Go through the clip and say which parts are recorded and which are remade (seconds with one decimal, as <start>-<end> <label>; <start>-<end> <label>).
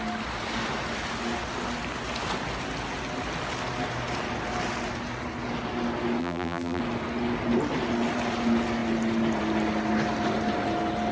0.0-6.2 recorded; 6.2-6.8 remade; 6.8-11.1 recorded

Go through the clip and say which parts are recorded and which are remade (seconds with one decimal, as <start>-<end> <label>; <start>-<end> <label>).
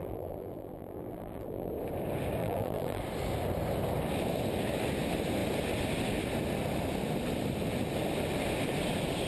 0.0-1.7 remade; 1.7-2.4 recorded; 2.4-3.0 remade; 3.0-9.3 recorded